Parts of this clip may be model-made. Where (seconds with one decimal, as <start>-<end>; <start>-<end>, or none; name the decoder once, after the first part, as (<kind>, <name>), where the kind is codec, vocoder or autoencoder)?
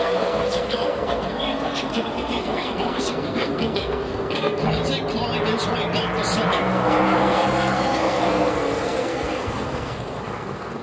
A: 0.0-4.8 (codec, SNAC); 6.5-10.8